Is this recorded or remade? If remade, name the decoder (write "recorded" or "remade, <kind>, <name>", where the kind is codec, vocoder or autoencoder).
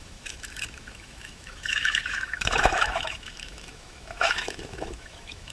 remade, autoencoder, DAC-VAE